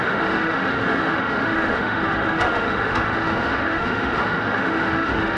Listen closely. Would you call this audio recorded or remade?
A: remade